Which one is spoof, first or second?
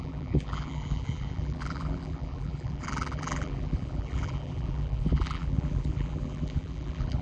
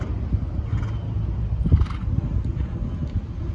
first